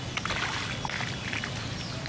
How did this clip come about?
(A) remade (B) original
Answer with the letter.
B